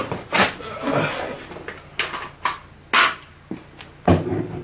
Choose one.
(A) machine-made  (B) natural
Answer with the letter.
B